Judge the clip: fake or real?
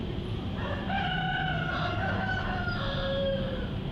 fake